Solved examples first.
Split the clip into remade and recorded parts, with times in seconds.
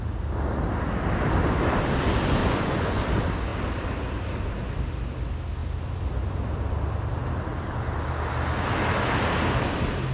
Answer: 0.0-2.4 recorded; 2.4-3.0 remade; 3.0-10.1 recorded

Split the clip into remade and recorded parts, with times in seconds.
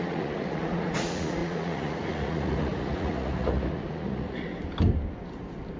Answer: 0.0-4.5 remade; 4.5-5.8 recorded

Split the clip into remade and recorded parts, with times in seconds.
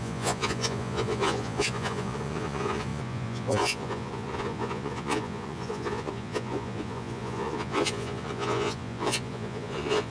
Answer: 0.0-10.1 remade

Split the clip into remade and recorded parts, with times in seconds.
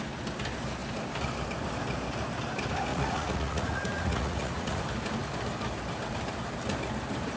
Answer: 0.0-2.9 recorded; 2.9-4.8 remade; 4.8-7.4 recorded